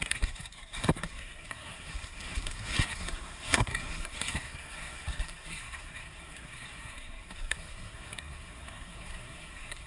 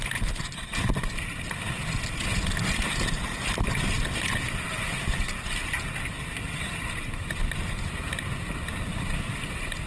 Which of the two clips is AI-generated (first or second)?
first